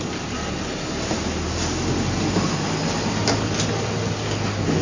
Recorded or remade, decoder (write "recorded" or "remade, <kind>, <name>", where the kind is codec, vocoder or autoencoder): recorded